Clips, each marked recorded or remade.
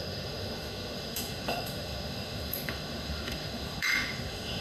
remade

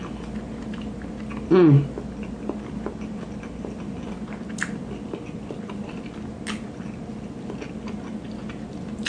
recorded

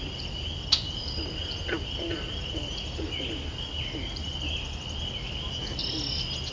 recorded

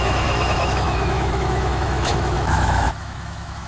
remade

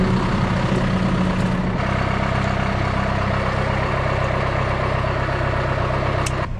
recorded